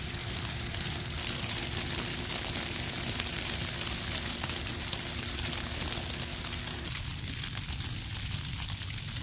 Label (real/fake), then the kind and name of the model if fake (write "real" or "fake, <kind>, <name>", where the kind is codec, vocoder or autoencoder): real